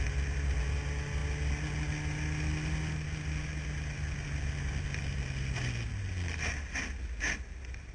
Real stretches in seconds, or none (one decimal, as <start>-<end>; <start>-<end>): 0.0-7.9